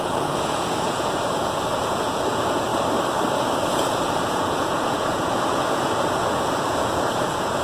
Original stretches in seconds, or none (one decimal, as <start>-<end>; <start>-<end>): 2.7-3.3